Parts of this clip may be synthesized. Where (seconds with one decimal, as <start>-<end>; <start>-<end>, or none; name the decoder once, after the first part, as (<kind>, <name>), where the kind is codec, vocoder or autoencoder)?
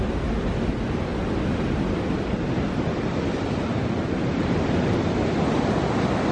none